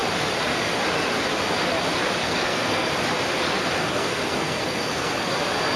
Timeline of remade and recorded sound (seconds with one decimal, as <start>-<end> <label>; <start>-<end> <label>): 0.0-2.2 recorded; 2.2-2.9 remade; 2.9-3.8 recorded; 3.8-5.3 remade; 5.3-5.8 recorded